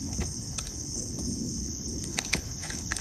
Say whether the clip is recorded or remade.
remade